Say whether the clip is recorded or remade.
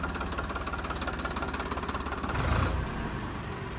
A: recorded